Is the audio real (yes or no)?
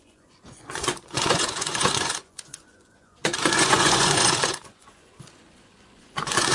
no